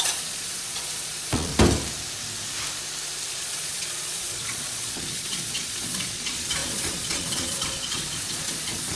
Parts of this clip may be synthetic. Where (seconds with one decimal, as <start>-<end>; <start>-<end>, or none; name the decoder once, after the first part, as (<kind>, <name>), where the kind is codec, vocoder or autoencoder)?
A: 0.0-1.5 (vocoder, Vocos); 3.3-9.0